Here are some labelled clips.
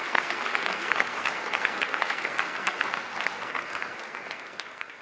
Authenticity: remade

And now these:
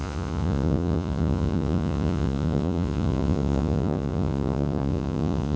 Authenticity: remade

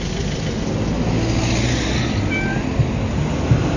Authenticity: recorded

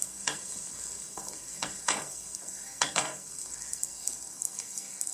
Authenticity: remade